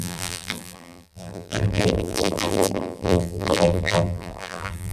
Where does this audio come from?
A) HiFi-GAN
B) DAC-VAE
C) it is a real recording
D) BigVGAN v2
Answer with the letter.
D